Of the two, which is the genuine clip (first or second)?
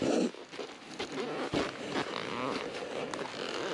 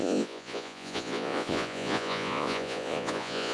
first